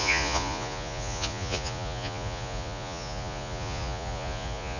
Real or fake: fake